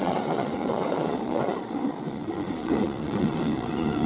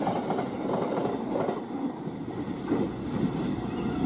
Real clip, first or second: second